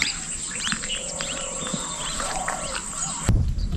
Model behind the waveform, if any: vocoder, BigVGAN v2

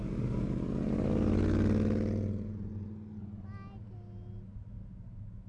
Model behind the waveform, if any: none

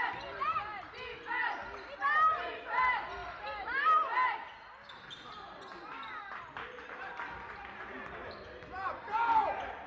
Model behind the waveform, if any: none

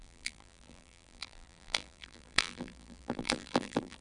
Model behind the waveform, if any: vocoder, BigVGAN v2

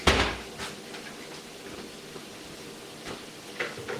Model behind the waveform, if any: none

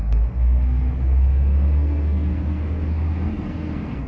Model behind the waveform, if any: codec, SNAC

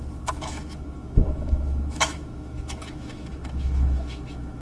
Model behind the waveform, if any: autoencoder, DAC-VAE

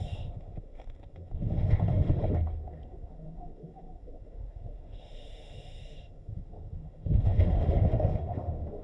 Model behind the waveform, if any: autoencoder, DAC-VAE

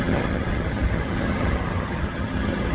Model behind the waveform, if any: vocoder, HiFi-GAN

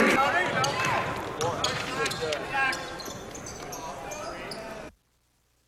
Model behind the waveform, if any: none